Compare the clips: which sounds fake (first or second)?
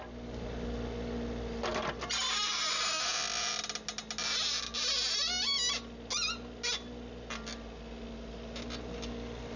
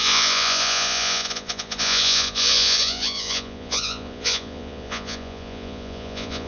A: second